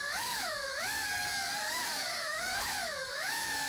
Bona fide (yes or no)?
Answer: no